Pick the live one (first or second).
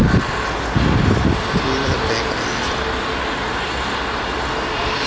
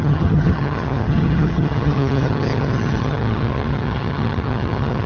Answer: first